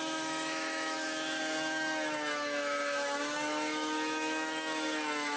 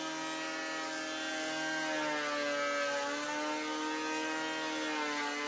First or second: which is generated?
first